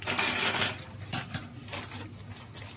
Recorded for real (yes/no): yes